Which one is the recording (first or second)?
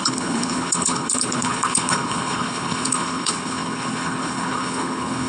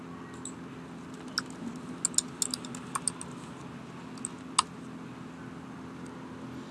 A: second